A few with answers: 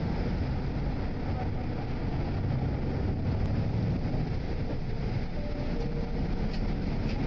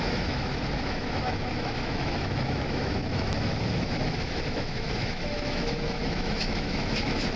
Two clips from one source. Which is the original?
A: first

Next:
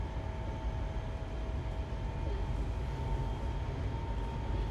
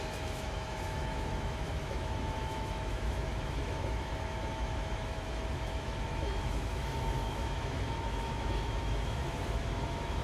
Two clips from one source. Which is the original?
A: first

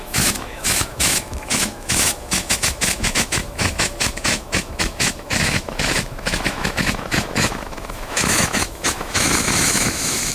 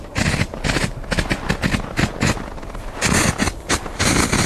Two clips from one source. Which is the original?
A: second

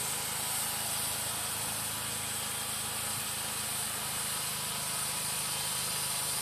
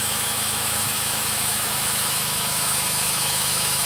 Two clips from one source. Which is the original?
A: first